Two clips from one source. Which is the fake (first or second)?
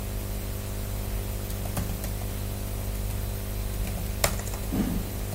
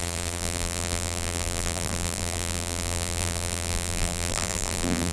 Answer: second